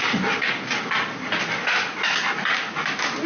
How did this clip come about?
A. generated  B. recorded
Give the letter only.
B